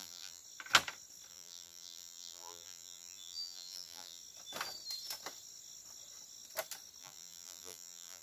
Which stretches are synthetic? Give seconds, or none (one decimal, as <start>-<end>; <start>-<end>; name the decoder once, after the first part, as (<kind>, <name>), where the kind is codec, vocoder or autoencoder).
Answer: 0.0-0.4 (vocoder, BigVGAN v2); 1.3-4.2; 7.0-8.2